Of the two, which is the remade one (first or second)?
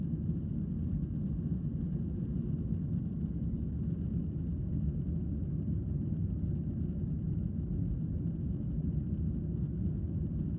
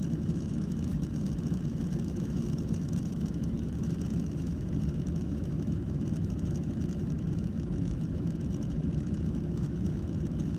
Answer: second